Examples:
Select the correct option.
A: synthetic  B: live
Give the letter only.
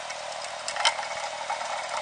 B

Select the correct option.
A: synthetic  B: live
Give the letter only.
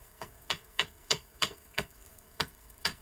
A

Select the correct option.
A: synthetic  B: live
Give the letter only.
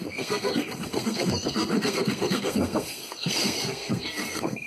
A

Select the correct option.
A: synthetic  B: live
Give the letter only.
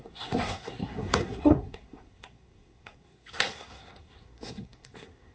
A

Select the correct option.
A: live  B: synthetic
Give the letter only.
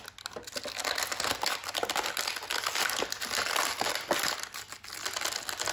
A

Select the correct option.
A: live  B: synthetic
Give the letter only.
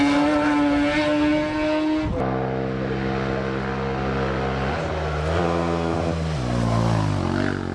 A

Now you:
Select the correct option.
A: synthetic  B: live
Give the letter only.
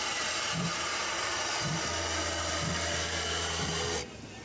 B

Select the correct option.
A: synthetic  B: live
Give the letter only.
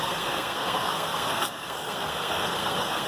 A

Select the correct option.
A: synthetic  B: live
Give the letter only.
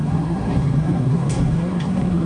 A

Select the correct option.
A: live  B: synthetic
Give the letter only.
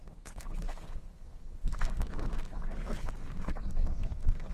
B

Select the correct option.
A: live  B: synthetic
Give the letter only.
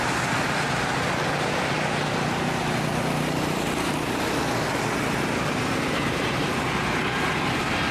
A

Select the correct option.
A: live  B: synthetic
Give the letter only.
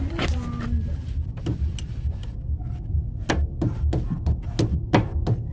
A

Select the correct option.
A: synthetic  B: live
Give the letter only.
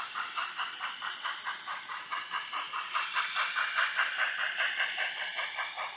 B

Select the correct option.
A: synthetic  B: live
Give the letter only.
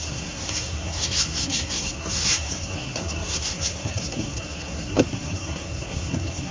A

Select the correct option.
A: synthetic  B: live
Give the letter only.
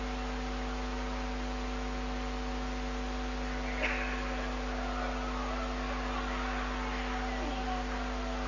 B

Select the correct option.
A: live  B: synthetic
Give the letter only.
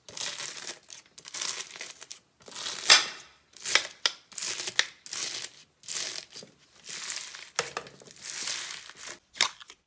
A